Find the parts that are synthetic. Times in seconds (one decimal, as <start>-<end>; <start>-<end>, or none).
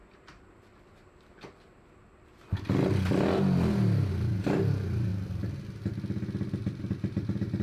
0.0-0.7; 4.1-5.1; 6.8-7.6